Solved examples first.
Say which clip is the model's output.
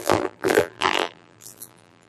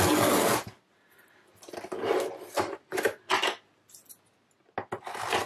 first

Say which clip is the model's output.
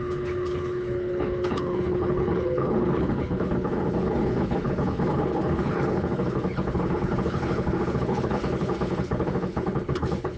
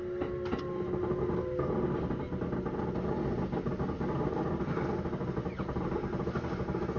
first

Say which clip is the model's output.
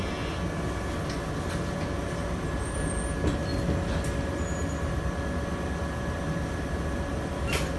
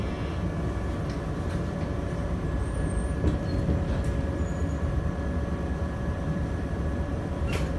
second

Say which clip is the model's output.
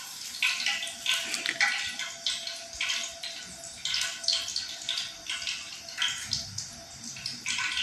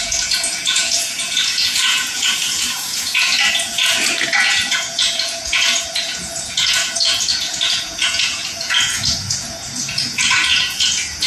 second